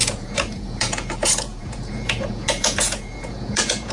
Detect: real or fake fake